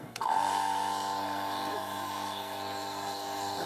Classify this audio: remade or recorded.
remade